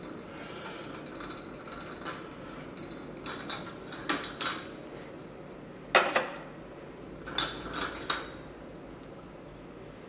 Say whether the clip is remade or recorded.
recorded